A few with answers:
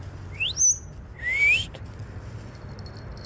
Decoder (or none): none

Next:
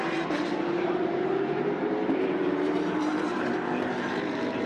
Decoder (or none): vocoder, BigVGAN v2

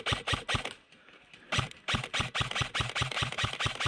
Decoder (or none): vocoder, BigVGAN v2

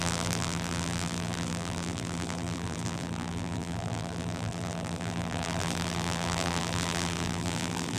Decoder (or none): vocoder, BigVGAN v2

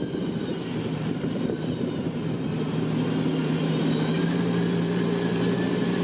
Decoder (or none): vocoder, BigVGAN v2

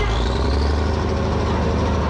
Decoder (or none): none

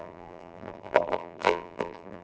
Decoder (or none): vocoder, BigVGAN v2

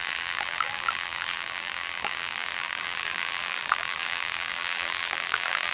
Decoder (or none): vocoder, BigVGAN v2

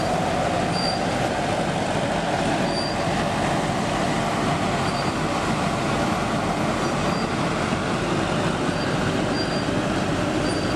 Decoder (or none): none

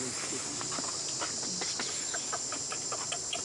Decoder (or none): none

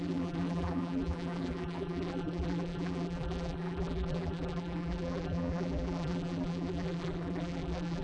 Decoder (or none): vocoder, BigVGAN v2